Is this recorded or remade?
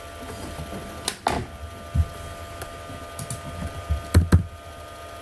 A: recorded